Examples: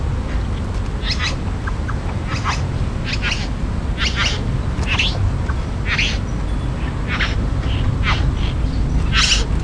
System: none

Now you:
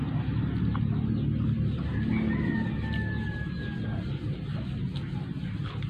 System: none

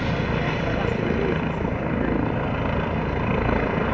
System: none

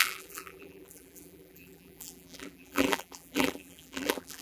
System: vocoder, BigVGAN v2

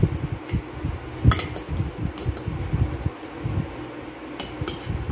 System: none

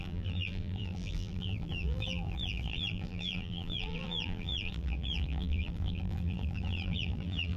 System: vocoder, BigVGAN v2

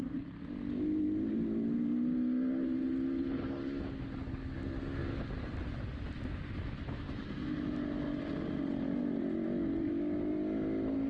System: none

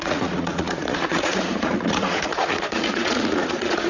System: vocoder, Vocos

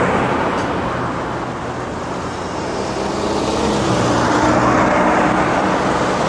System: none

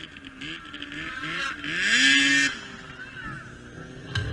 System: none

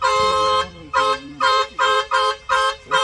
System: vocoder, BigVGAN v2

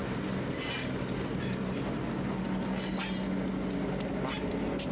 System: none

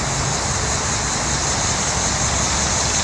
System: none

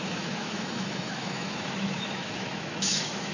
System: autoencoder, DAC-VAE